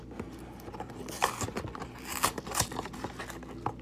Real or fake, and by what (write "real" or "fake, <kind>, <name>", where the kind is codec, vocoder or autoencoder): real